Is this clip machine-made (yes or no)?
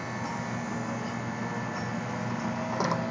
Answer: no